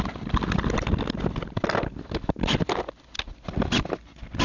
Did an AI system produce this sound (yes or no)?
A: no